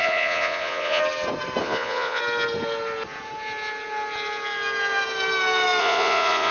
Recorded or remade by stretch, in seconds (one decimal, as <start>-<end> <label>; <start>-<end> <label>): 0.0-1.0 remade; 1.0-1.6 recorded; 1.6-2.2 remade; 2.2-5.8 recorded; 5.8-6.5 remade

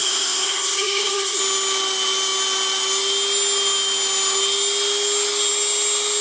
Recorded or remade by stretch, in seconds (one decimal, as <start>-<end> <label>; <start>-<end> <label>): 0.0-1.4 remade; 1.4-6.2 recorded

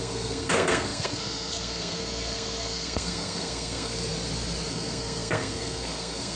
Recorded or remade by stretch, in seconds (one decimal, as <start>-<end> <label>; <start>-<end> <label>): 0.0-4.0 remade; 4.0-4.7 recorded; 4.7-6.4 remade

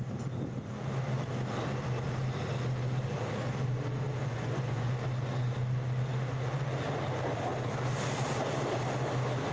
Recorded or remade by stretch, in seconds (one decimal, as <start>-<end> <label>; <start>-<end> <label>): 0.0-4.2 recorded; 4.2-4.9 remade; 4.9-9.5 recorded

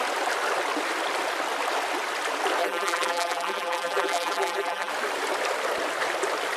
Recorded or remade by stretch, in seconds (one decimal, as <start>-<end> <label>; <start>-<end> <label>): 0.0-2.6 recorded; 2.6-4.9 remade; 4.9-6.6 recorded